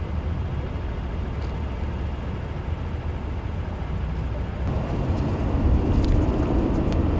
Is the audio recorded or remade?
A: recorded